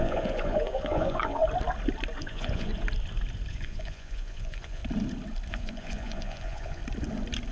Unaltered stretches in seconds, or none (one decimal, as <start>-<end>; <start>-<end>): 1.4-2.2; 2.7-3.5; 4.8-5.5; 6.8-7.5